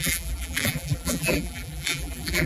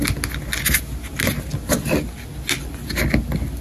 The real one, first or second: second